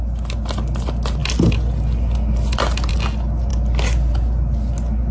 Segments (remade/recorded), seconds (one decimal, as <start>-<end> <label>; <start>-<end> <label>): 0.0-5.1 recorded